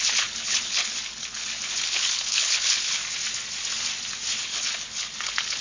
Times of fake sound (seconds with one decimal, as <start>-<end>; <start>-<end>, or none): 0.0-3.0; 4.4-5.6